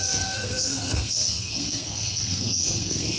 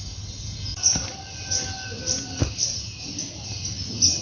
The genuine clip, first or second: second